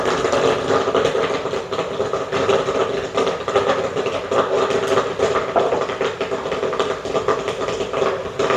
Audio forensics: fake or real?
real